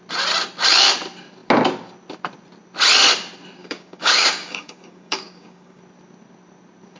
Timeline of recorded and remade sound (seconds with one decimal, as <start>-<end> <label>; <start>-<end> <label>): 0.0-3.6 recorded; 3.6-5.8 remade; 5.8-7.0 recorded